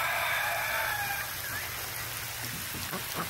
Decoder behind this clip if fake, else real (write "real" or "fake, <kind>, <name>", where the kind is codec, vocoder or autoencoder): real